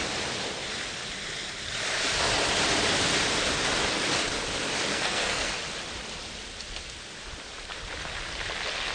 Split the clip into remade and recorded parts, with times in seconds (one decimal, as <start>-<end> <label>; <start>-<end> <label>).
0.0-4.9 recorded; 4.9-5.5 remade; 5.5-8.9 recorded